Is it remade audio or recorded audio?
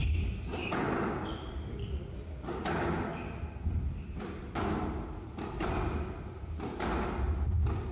recorded